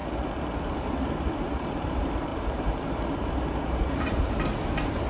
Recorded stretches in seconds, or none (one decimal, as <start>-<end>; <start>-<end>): 0.0-1.4

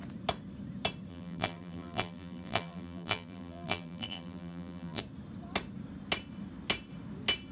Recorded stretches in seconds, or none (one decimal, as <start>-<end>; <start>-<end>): 0.0-1.1; 5.0-7.5

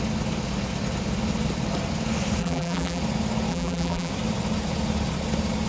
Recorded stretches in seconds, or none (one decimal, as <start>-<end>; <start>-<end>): 0.0-2.4; 3.0-3.5; 4.1-5.7

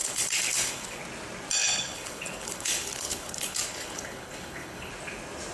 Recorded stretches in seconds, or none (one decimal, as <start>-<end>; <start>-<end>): 1.0-1.6; 4.9-5.5